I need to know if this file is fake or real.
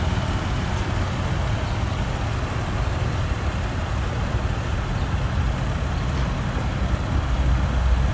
real